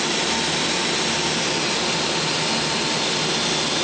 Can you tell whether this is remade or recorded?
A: recorded